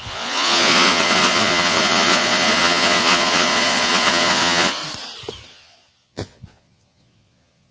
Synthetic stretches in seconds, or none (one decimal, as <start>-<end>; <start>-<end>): 0.0-4.8; 5.5-7.7